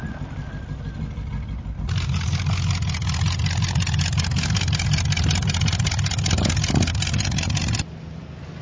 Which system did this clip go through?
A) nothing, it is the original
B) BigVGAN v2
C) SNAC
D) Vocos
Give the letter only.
A